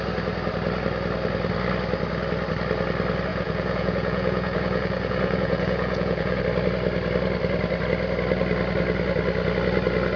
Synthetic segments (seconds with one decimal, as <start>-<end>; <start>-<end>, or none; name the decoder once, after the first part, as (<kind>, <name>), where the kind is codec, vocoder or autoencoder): 3.3-6.4 (vocoder, Vocos)